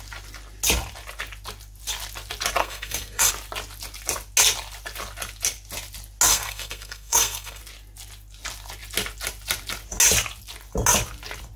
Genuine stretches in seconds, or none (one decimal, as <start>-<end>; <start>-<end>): 0.0-2.6; 3.3-6.3; 7.6-11.6